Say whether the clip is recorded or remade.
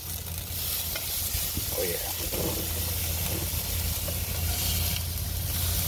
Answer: recorded